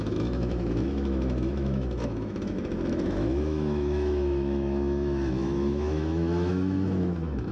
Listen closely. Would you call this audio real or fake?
fake